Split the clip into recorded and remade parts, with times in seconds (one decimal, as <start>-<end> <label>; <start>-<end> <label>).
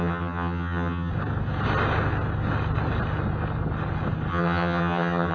0.0-1.1 remade; 1.1-4.3 recorded; 4.3-5.3 remade